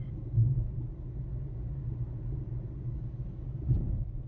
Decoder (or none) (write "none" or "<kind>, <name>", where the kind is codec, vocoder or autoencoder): none